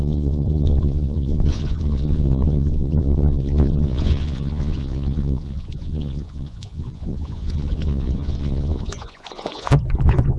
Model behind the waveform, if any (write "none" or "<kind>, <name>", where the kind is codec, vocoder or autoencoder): vocoder, Vocos